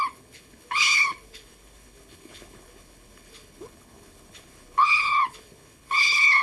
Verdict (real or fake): fake